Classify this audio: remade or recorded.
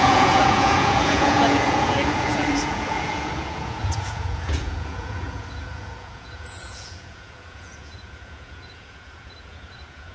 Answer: remade